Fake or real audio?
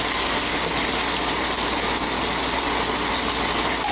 real